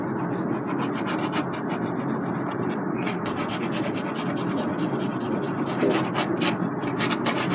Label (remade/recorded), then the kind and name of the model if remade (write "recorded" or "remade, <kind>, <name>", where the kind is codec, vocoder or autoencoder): recorded